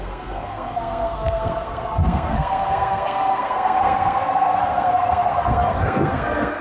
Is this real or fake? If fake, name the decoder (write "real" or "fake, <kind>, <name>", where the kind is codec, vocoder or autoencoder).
fake, codec, SNAC